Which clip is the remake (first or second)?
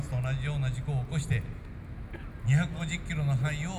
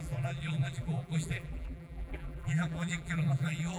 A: second